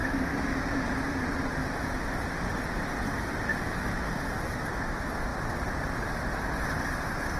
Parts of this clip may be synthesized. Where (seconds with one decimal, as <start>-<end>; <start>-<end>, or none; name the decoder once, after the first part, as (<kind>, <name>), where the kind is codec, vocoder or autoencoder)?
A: 0.0-0.9 (autoencoder, DAC-VAE); 1.6-2.2; 3.5-4.1